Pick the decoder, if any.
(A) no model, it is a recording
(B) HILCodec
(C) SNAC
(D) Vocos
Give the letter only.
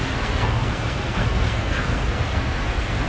C